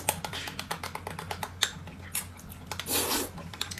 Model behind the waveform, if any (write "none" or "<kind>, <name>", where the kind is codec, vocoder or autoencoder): none